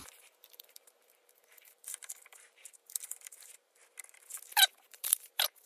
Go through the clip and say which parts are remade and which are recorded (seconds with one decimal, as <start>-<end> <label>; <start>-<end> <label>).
0.0-3.8 remade; 3.8-4.5 recorded; 4.5-5.7 remade